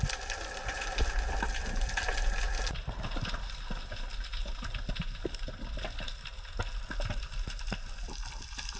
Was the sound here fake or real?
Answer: real